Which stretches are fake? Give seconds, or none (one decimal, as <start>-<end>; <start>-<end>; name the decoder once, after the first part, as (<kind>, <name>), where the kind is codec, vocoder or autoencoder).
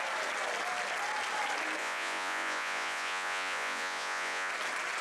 1.8-4.5 (vocoder, Vocos)